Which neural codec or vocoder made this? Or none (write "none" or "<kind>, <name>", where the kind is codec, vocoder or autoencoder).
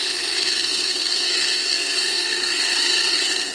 codec, SNAC